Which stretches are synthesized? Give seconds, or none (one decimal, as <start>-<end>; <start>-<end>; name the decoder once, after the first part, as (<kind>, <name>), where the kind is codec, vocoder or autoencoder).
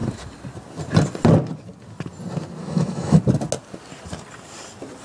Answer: 2.6-3.2 (autoencoder, DAC-VAE)